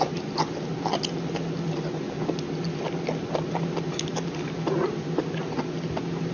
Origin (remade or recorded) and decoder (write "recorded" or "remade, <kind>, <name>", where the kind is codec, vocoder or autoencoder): recorded